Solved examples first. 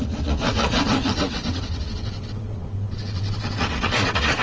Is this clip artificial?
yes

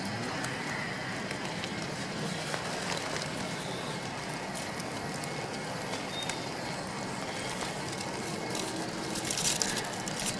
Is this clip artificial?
no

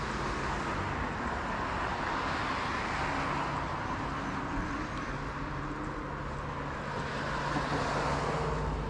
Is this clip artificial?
no